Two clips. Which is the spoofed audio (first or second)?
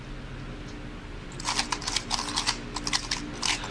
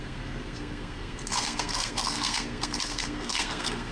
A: second